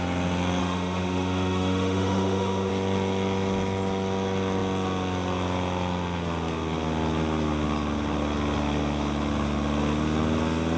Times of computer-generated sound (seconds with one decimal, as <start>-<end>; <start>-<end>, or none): 0.6-2.7